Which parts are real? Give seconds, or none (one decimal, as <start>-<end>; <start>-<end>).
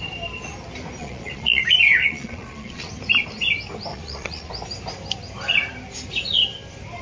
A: 0.0-1.0; 1.6-2.0; 2.9-3.9; 4.5-7.0